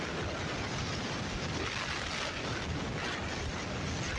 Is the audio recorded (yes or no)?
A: yes